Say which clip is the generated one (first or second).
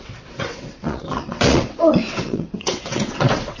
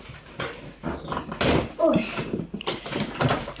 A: first